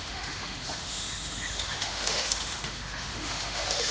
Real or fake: fake